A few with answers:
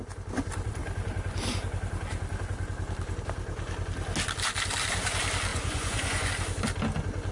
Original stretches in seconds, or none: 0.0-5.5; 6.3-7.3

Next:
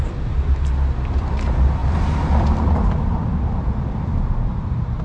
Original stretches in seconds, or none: none

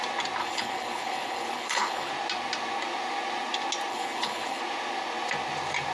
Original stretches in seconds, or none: 0.0-0.4; 2.1-3.9; 4.6-5.9

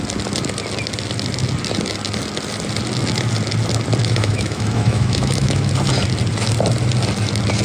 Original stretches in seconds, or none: 0.0-4.0; 5.7-7.6

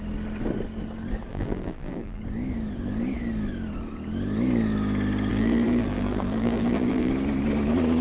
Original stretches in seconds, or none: 0.0-1.3; 2.2-5.3; 7.1-8.0